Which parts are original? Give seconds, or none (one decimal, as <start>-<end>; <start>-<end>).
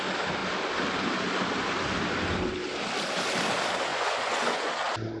0.0-3.9; 4.7-5.2